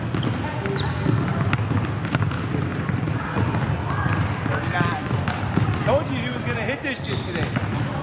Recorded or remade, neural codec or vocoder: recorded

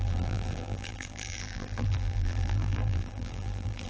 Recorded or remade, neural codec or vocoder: remade, vocoder, BigVGAN v2